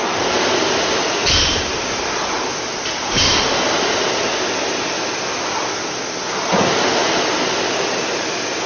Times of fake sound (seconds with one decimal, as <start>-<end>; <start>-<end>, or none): none